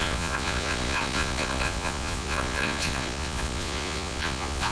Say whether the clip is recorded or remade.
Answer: remade